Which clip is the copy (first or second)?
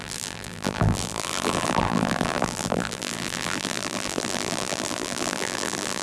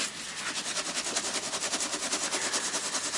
first